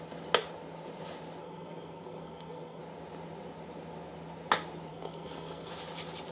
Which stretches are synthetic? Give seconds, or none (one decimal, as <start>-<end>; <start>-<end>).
1.4-2.8; 4.9-5.7